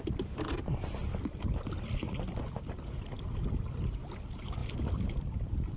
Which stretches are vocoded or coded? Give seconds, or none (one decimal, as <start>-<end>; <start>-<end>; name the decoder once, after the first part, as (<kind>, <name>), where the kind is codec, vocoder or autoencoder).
none